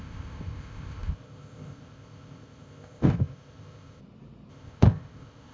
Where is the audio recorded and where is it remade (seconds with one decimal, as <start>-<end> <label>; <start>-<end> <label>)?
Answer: 0.0-4.0 remade; 4.0-4.5 recorded; 4.5-5.5 remade